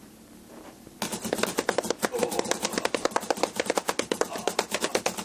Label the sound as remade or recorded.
recorded